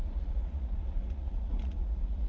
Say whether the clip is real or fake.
fake